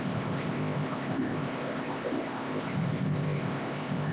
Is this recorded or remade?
remade